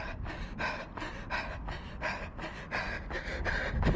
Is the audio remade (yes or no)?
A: no